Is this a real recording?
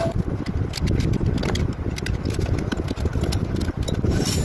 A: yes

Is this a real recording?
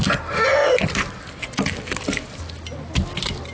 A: yes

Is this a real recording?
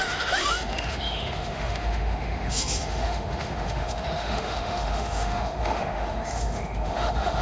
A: no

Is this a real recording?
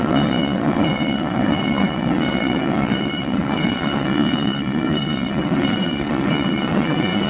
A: no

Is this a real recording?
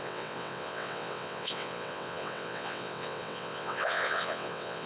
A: no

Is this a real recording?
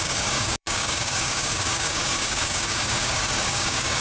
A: no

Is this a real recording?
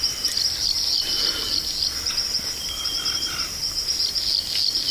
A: yes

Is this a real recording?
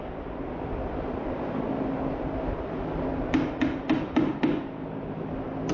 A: yes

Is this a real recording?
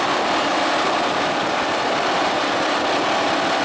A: yes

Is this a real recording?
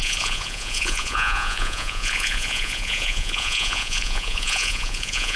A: no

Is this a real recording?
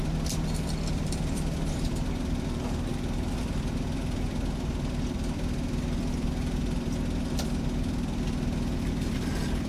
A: no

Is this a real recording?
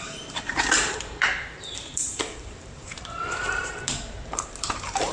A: no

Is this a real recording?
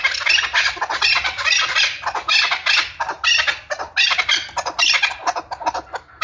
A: yes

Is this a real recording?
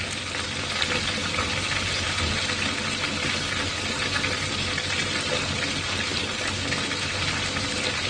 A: yes